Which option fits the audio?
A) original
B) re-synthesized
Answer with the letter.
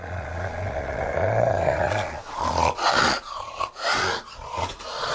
B